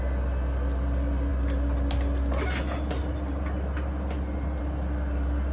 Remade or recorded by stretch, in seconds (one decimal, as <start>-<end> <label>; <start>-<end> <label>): 0.0-5.5 recorded